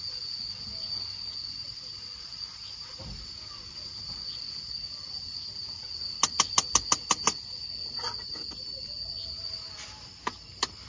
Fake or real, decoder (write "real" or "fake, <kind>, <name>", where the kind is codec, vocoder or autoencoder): real